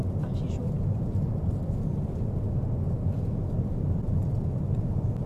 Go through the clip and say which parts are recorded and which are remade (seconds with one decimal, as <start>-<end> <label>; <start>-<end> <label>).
0.0-5.3 recorded